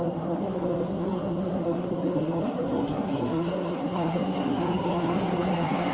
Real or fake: fake